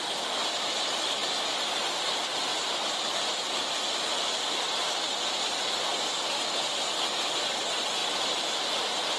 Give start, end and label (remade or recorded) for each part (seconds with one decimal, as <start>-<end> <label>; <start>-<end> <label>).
0.0-2.5 recorded; 2.5-4.8 remade; 4.8-9.2 recorded